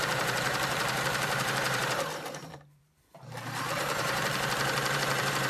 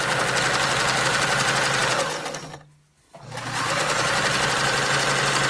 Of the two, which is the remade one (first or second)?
first